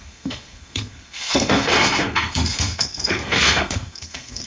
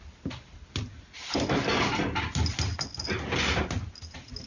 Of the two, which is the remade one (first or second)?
first